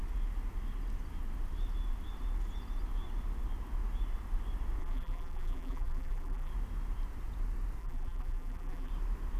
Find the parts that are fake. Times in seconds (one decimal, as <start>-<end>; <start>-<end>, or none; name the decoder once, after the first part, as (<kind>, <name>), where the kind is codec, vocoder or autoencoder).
4.8-6.5 (vocoder, BigVGAN v2); 7.8-8.9